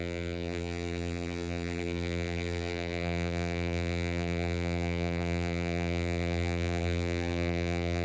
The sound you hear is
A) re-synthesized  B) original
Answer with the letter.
A